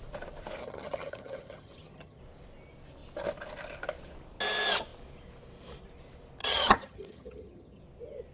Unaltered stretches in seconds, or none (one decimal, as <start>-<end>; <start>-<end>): 0.0-0.6; 2.2-6.4; 7.8-8.3